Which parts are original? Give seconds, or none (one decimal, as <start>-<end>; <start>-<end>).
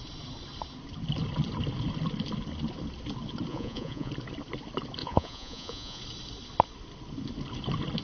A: 0.0-3.5; 4.1-5.0; 6.0-8.0